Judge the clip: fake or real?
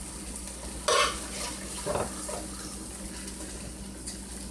real